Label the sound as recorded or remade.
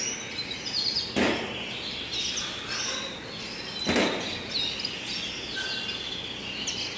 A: recorded